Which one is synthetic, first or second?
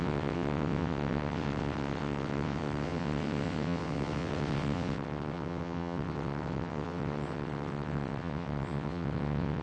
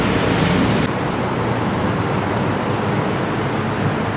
first